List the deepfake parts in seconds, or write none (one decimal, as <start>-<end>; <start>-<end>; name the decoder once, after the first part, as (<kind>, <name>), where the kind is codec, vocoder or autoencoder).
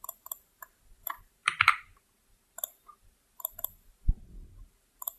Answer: none